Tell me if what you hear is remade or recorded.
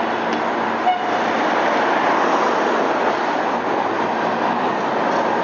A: recorded